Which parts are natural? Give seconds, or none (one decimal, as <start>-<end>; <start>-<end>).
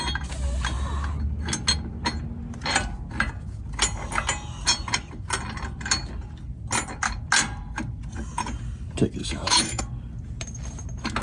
0.0-9.2; 9.8-11.2